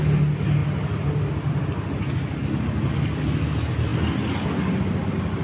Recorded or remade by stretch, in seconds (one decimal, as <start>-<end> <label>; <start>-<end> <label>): 0.0-5.4 recorded

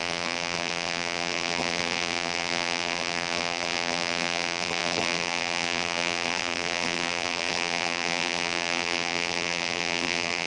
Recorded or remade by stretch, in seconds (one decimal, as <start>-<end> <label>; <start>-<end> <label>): 0.0-10.5 remade

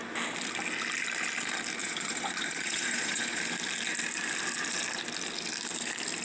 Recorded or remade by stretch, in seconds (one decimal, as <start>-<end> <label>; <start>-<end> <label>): 0.0-1.8 recorded; 1.8-3.4 remade; 3.4-6.2 recorded

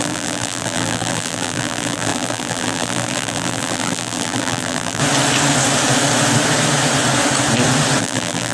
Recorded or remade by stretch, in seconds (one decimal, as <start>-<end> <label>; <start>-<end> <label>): 0.0-5.0 remade; 5.0-8.0 recorded; 8.0-8.5 remade